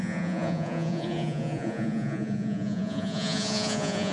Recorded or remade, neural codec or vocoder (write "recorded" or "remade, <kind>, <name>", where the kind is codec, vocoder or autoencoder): remade, vocoder, Vocos